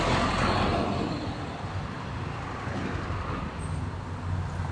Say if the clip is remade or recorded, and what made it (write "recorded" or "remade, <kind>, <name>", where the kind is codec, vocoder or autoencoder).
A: recorded